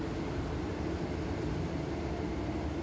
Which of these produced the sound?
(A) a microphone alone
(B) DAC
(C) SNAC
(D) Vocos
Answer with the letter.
A